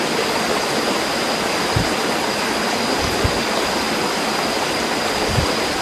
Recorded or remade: recorded